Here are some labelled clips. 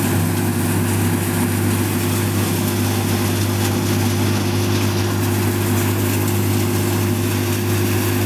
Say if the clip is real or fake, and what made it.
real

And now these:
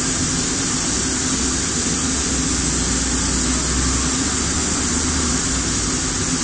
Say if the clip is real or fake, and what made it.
real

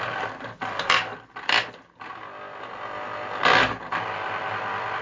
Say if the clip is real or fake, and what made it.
real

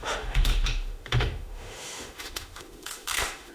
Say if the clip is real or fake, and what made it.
fake, autoencoder, DAC-VAE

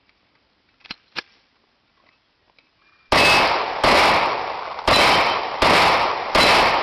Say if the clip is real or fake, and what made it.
real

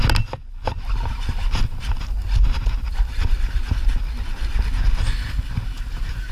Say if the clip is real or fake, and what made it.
real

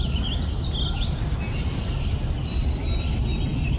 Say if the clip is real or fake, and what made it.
real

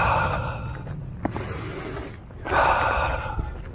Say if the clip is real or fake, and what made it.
real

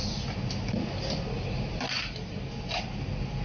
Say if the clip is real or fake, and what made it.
real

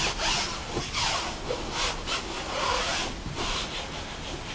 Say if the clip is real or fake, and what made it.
real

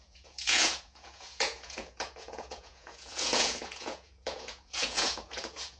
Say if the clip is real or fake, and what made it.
fake, vocoder, Vocos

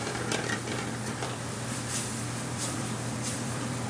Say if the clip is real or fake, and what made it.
fake, vocoder, BigVGAN v2